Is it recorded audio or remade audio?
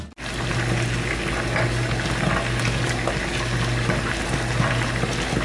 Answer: recorded